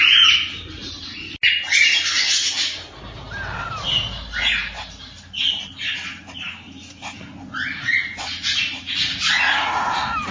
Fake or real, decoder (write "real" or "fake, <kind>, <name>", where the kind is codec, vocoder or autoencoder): real